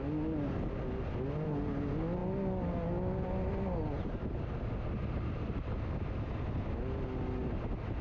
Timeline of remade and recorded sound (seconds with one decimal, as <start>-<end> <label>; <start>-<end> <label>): 0.0-8.0 recorded